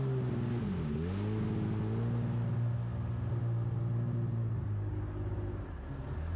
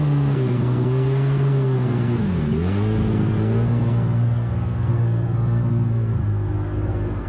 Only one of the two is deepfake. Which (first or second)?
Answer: second